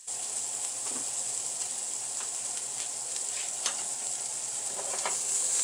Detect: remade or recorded recorded